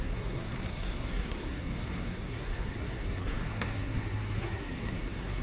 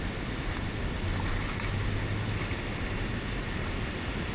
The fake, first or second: first